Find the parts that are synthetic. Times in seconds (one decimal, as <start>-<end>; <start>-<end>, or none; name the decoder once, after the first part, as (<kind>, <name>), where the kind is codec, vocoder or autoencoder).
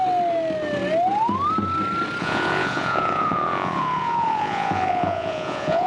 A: 2.2-5.9 (vocoder, Vocos)